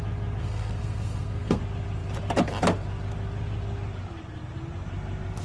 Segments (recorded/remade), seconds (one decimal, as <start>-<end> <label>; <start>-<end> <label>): 0.0-0.4 recorded; 0.4-1.6 remade; 1.6-5.4 recorded